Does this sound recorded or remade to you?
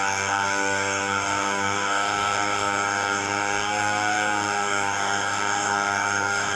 remade